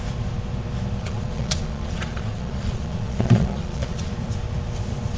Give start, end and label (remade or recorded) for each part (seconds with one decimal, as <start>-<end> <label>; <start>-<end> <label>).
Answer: 0.0-1.0 recorded; 1.0-4.1 remade; 4.1-5.2 recorded